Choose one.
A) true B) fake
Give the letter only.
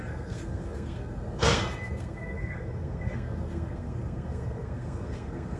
B